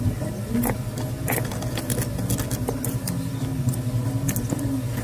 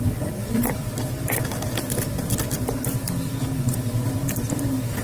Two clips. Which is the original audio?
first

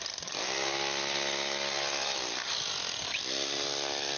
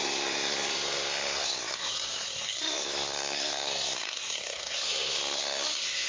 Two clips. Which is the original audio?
first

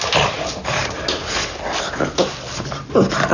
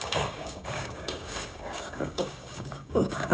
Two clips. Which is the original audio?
first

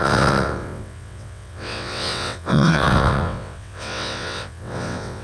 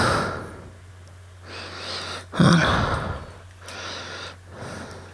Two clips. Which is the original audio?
second